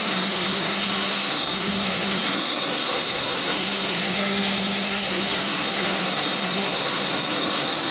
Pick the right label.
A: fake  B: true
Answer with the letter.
A